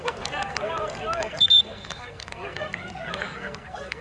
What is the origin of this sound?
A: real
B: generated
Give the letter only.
B